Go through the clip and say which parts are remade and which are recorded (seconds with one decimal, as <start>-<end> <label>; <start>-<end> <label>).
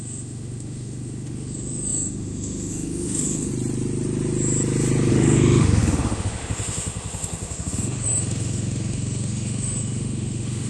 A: 0.0-3.5 remade; 3.5-5.1 recorded; 5.1-10.7 remade